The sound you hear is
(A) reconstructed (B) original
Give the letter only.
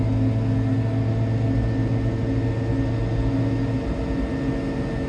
B